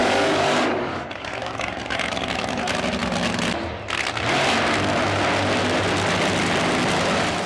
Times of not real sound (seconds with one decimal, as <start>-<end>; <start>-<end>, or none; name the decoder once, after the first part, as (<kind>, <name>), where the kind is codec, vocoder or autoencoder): 0.0-2.6 (codec, DAC)